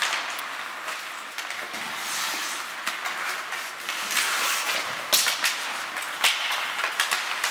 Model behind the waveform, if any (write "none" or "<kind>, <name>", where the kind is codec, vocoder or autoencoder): none